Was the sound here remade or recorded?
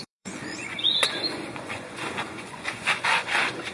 remade